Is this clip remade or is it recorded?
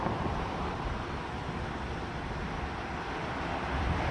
recorded